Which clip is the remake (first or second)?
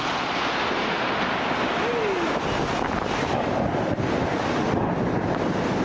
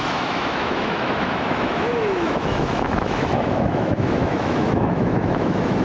second